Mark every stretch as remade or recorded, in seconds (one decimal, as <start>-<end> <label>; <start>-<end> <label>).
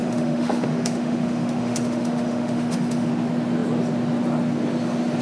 0.0-3.1 remade; 3.1-5.2 recorded